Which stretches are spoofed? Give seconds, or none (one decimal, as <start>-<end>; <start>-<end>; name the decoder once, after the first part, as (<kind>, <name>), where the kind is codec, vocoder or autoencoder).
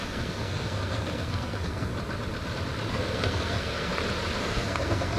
0.0-1.9 (codec, SNAC); 2.9-3.9; 4.4-5.2